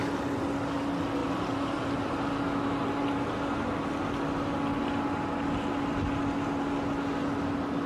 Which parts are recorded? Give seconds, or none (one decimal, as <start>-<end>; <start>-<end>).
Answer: 0.0-1.2; 1.9-7.9